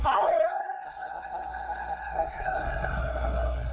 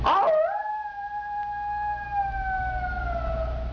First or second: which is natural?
second